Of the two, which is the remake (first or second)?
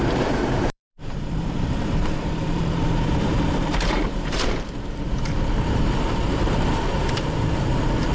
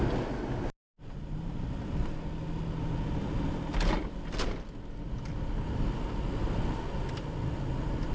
first